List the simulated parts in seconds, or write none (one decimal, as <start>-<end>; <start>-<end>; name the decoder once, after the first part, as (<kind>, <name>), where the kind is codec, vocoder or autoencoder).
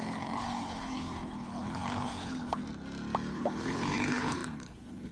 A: 0.0-2.6 (codec, HILCodec); 3.3-5.1